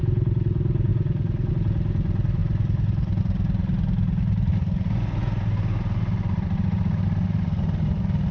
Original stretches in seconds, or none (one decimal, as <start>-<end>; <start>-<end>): 0.0-0.9; 1.5-2.4; 3.2-8.3